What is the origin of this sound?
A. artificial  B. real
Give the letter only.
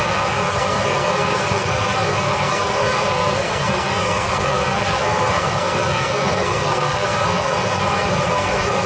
A